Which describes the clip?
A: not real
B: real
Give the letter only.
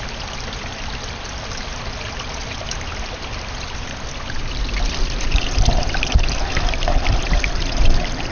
B